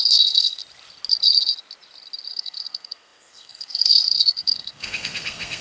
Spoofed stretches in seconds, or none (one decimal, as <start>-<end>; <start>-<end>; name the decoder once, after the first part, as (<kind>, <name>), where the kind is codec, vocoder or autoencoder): 0.0-0.6 (codec, SNAC); 2.3-5.6